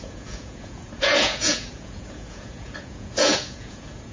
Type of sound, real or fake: fake